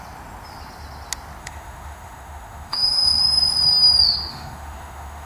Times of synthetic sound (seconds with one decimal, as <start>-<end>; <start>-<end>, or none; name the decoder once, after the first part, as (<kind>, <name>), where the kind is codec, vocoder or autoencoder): 1.4-3.2 (autoencoder, DAC-VAE); 4.3-5.3